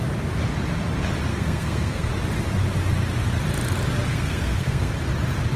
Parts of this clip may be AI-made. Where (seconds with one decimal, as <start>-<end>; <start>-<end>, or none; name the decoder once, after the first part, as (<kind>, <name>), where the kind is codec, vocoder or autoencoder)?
1.3-2.1 (codec, SNAC); 4.1-4.9